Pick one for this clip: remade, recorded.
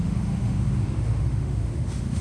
remade